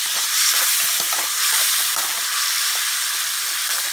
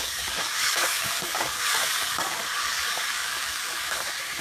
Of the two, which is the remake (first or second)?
second